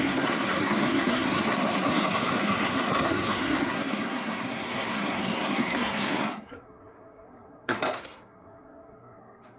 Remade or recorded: remade